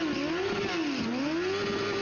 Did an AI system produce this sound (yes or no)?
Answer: no